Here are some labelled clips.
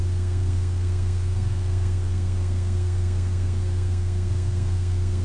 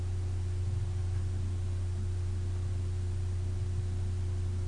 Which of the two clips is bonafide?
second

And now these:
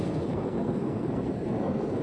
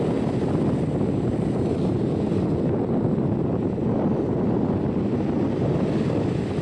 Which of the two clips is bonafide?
second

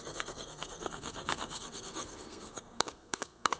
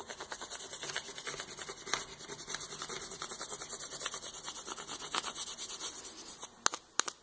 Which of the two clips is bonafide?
second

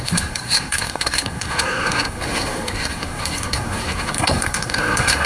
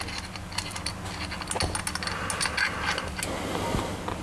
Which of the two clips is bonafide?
second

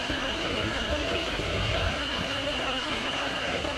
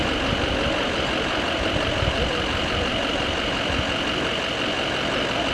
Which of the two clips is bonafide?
second